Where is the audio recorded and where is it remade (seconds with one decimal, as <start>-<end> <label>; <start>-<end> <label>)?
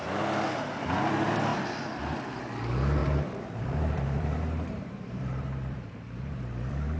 0.0-3.0 recorded; 3.0-7.0 remade